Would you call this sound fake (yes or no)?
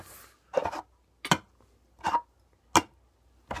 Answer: no